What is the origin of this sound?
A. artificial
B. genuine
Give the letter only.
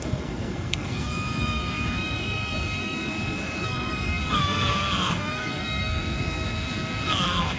A